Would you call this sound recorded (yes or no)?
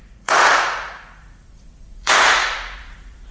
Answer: no